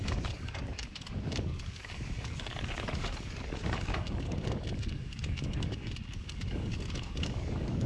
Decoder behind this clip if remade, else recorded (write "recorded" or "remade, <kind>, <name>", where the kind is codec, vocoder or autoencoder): remade, codec, DAC